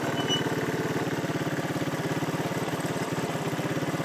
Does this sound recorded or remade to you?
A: recorded